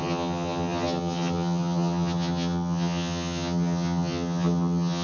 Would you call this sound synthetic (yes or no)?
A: yes